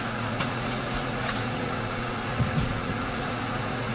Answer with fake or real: fake